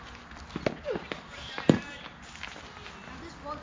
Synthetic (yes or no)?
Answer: no